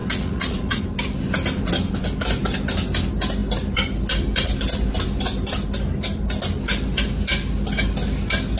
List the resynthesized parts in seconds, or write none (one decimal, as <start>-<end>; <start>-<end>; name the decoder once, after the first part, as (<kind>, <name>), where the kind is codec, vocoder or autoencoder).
0.0-0.8 (vocoder, Vocos)